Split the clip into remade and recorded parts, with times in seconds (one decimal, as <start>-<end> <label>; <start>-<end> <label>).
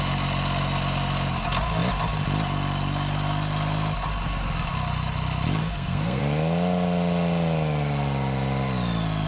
0.0-5.6 recorded; 5.6-6.2 remade; 6.2-9.3 recorded